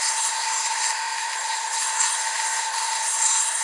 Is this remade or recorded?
remade